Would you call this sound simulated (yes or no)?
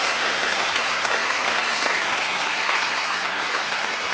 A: yes